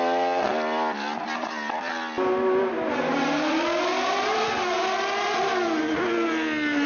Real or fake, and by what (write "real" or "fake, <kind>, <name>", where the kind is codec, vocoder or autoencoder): real